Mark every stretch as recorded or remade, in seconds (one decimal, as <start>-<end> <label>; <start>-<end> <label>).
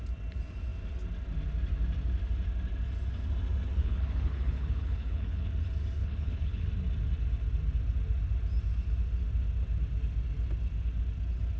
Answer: 0.0-3.8 recorded; 3.8-5.5 remade; 5.5-6.0 recorded; 6.0-6.7 remade; 6.7-11.6 recorded